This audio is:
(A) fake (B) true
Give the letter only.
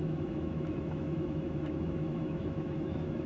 A